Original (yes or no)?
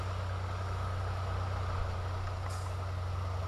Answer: yes